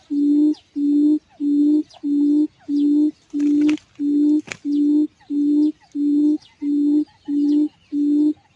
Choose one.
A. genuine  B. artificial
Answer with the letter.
A